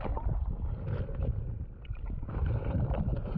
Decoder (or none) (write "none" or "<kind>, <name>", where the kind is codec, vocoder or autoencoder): none